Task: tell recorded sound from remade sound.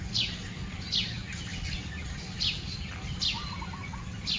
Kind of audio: recorded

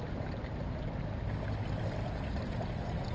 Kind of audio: recorded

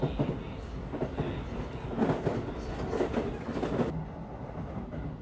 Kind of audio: recorded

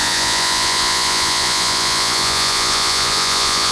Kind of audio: remade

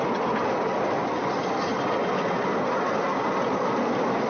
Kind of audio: recorded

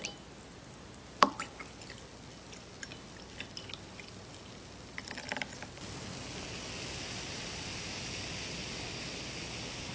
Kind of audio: recorded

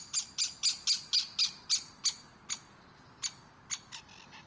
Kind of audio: recorded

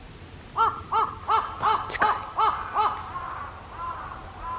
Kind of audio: recorded